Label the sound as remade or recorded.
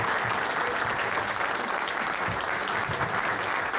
recorded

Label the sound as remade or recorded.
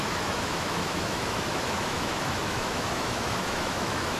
remade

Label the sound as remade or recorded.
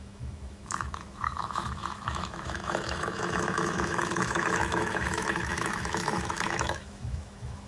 remade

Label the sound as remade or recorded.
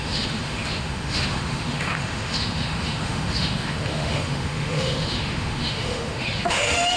remade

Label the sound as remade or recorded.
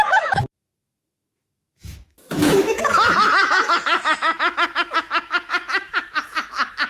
remade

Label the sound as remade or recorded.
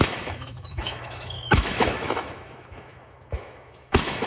remade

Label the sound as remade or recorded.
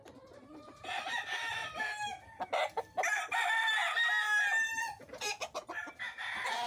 recorded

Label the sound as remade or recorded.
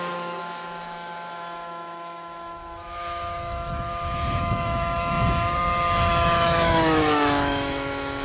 remade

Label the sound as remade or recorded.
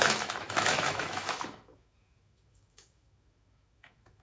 remade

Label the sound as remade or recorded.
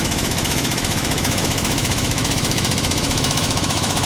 remade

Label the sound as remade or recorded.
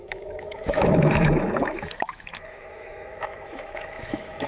remade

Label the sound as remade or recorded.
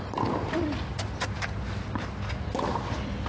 recorded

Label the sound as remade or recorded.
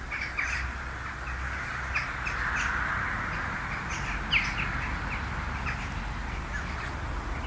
recorded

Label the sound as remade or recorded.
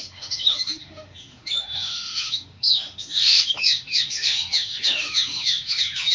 remade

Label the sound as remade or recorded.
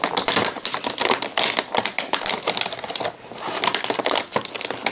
recorded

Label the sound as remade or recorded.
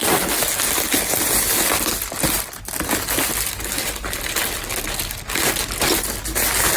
recorded